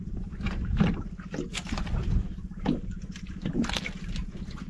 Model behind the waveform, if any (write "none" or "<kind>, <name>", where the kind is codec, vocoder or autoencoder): none